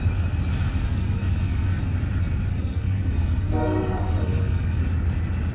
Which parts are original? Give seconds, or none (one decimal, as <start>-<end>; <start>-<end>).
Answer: 0.0-0.8; 1.8-2.5; 4.8-5.5